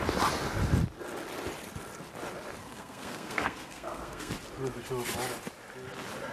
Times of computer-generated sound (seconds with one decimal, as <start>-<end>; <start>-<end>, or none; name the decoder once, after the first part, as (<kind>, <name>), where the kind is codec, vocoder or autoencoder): 2.6-4.3 (codec, SNAC)